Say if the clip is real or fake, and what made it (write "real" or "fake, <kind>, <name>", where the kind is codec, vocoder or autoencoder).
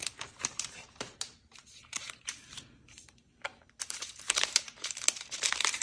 fake, vocoder, BigVGAN v2